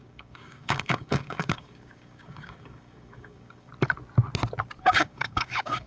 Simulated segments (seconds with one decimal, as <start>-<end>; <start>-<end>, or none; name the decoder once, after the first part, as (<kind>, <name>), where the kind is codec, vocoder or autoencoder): 0.0-3.7 (codec, DAC); 4.8-5.9